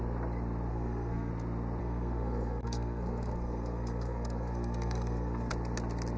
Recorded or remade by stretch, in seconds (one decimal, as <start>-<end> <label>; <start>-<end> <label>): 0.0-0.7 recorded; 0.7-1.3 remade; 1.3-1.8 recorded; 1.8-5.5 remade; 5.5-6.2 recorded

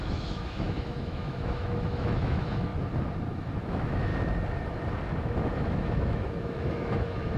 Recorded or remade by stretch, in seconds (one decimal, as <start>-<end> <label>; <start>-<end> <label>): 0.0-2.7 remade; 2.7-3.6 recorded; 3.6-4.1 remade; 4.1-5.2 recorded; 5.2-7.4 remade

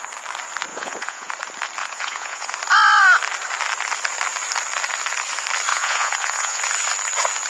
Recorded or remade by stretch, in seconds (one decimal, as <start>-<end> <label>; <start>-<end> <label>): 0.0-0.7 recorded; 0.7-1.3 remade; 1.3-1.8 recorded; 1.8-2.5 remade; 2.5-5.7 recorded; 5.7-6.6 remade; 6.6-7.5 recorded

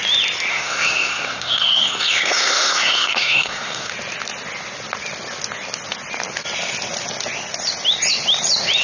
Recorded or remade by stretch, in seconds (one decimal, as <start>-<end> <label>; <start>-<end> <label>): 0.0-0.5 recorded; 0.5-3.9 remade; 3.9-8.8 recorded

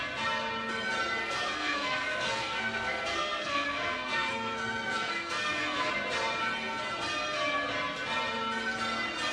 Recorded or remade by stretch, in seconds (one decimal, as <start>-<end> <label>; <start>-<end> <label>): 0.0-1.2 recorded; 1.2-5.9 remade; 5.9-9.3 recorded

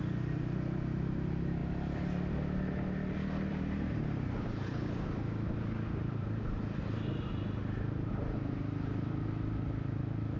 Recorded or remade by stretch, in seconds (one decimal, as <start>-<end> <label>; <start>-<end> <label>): 0.0-3.5 recorded; 3.5-4.7 remade; 4.7-6.0 recorded; 6.0-6.6 remade; 6.6-10.4 recorded

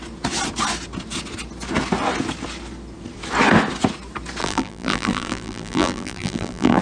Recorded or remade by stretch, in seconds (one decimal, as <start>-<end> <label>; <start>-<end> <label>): 0.0-4.4 recorded; 4.4-6.8 remade

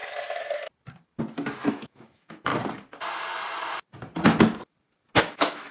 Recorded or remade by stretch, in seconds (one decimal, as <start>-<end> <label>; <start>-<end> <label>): 0.0-1.7 recorded; 1.7-2.5 remade; 2.5-5.2 recorded; 5.2-5.7 remade